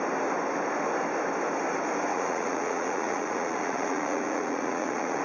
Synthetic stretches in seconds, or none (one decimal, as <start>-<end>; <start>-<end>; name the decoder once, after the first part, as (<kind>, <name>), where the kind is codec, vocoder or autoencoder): 2.1-5.2 (vocoder, Vocos)